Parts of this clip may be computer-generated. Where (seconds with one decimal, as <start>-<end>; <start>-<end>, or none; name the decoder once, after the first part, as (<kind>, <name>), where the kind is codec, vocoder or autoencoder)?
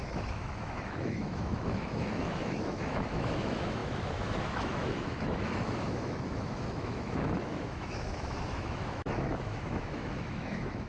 0.0-10.9 (autoencoder, DAC-VAE)